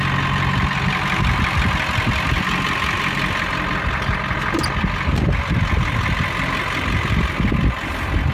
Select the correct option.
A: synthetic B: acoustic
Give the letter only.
B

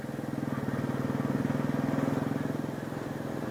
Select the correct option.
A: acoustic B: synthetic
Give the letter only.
A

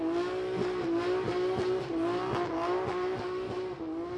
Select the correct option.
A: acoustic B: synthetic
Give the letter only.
A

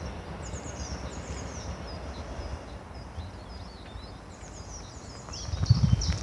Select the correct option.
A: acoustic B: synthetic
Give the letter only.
A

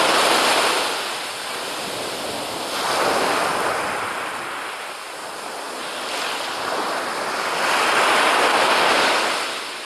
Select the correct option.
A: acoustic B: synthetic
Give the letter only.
A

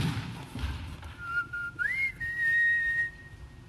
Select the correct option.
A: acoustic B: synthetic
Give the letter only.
A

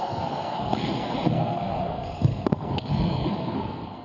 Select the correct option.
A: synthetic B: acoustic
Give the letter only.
A